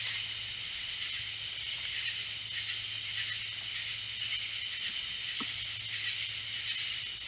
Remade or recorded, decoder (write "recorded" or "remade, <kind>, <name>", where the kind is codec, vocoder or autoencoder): recorded